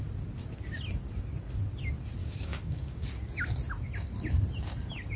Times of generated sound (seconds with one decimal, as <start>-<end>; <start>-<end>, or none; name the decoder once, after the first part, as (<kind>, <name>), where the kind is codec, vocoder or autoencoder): 2.2-3.1 (codec, DAC)